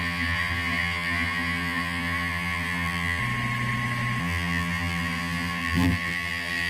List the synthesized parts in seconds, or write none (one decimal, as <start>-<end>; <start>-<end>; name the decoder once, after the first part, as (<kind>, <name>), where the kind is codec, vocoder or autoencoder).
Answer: 0.0-3.2 (vocoder, BigVGAN v2); 4.2-6.7